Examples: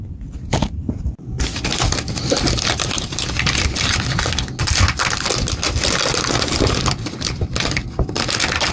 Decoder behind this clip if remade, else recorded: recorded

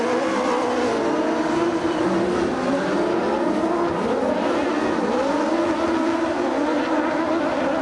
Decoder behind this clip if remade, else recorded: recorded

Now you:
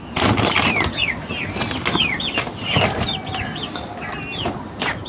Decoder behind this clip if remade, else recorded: recorded